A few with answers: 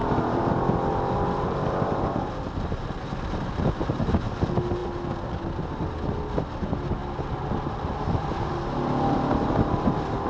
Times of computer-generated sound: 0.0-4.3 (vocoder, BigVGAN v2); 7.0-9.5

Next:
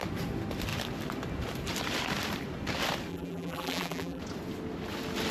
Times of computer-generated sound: 3.1-4.2 (vocoder, BigVGAN v2)